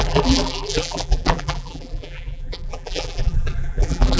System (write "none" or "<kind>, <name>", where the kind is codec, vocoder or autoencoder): vocoder, BigVGAN v2